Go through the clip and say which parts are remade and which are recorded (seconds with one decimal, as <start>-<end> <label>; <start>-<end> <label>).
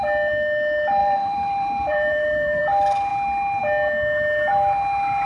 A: 0.0-1.0 recorded; 1.0-2.6 remade; 2.6-5.3 recorded